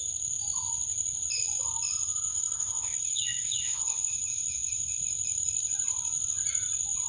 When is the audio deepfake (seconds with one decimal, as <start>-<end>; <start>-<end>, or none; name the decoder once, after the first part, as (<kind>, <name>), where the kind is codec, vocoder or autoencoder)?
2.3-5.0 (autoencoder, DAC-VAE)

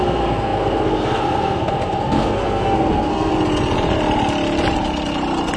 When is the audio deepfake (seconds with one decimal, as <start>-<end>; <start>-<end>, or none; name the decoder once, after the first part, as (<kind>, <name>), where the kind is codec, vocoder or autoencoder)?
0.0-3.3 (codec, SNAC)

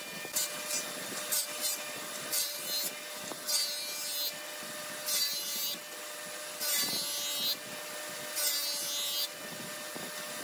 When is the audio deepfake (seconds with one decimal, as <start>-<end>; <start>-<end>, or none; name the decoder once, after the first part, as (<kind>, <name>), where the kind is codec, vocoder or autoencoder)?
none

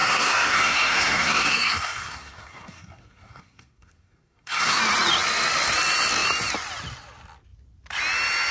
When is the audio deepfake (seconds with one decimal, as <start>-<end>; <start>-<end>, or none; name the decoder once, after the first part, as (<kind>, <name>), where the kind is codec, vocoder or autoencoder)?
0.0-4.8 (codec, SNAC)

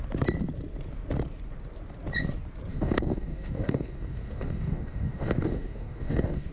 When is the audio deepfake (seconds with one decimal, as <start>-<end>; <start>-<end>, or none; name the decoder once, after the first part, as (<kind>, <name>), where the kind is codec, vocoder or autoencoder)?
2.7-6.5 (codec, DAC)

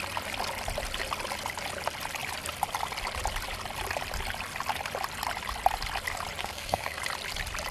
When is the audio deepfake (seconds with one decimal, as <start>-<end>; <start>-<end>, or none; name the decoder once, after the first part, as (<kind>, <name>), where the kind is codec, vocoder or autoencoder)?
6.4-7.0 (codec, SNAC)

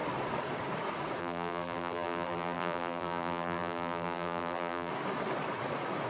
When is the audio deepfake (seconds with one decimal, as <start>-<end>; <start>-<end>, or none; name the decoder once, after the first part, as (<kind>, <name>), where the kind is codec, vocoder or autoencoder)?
1.2-4.9 (vocoder, BigVGAN v2)